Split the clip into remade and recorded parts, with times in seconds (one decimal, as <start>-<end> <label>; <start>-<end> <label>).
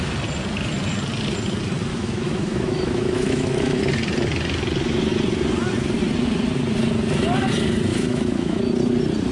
0.0-1.9 recorded; 1.9-3.8 remade; 3.8-7.9 recorded; 7.9-8.6 remade; 8.6-9.3 recorded